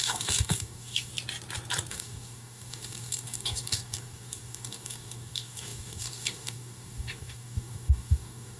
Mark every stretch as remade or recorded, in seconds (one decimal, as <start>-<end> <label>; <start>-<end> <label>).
0.0-1.1 remade; 1.1-1.9 recorded; 1.9-8.6 remade